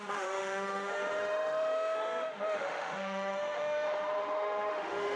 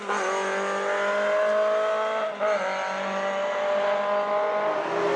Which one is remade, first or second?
first